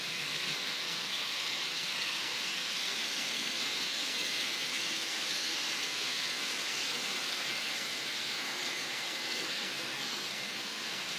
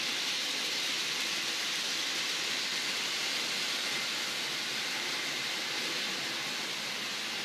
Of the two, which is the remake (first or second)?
first